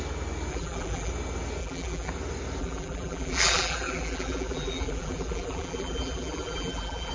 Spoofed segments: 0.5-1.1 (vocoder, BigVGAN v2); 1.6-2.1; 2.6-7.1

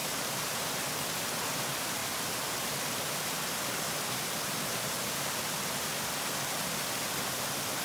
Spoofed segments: none

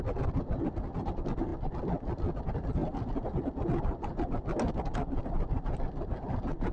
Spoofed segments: none